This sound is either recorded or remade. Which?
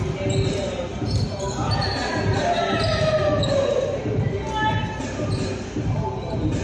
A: recorded